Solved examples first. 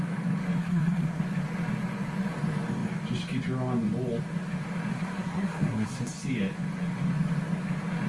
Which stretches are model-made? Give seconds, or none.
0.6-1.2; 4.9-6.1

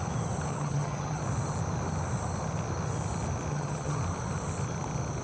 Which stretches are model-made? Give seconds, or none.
0.5-1.2; 3.5-4.0

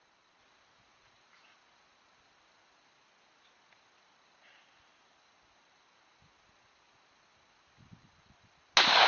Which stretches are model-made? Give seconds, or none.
none

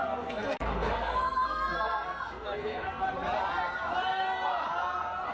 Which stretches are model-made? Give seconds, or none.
0.0-3.0